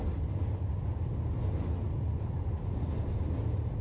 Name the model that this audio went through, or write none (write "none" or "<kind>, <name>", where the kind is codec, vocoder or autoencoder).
none